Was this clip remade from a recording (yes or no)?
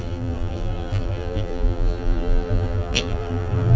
yes